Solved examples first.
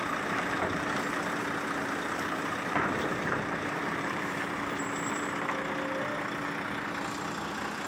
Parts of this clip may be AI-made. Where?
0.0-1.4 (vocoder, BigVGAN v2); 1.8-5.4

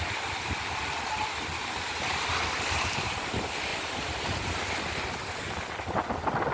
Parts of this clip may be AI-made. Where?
3.7-4.5 (vocoder, BigVGAN v2)

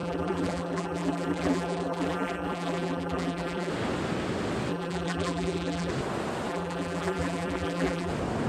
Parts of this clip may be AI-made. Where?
0.0-3.7 (vocoder, BigVGAN v2); 4.7-5.9; 6.5-8.1